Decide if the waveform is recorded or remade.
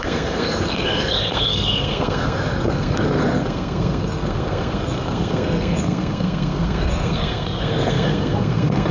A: remade